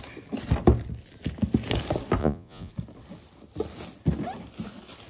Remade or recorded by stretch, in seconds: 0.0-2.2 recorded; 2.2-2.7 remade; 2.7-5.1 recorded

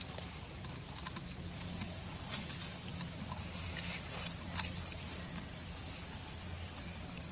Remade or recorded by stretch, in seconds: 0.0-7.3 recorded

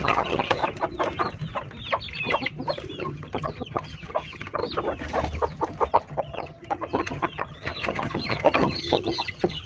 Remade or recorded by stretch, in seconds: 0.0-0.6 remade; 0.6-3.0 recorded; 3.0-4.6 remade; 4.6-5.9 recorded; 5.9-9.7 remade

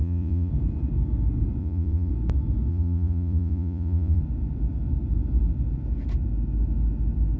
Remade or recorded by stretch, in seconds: 0.0-0.5 remade; 0.5-1.6 recorded; 1.6-2.1 remade; 2.1-2.7 recorded; 2.7-4.2 remade; 4.2-7.4 recorded

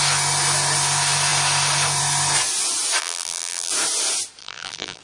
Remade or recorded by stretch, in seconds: 0.0-3.0 recorded; 3.0-3.7 remade; 3.7-4.4 recorded; 4.4-5.0 remade